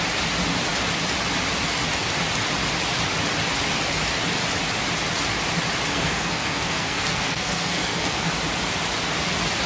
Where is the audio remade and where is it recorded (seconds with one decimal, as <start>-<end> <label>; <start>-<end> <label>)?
0.0-5.9 recorded; 5.9-8.3 remade; 8.3-9.7 recorded